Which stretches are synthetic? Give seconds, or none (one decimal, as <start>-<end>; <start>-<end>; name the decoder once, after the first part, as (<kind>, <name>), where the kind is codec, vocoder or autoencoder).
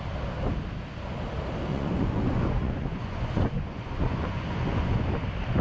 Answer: 1.7-5.1 (vocoder, Vocos)